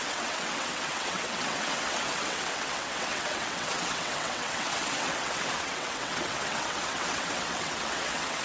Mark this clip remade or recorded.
remade